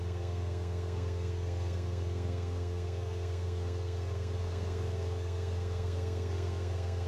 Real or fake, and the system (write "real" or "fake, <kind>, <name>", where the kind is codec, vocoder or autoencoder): fake, codec, SNAC